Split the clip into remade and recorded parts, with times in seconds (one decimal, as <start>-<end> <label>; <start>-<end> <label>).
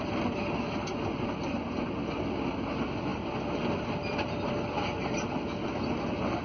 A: 0.0-6.4 recorded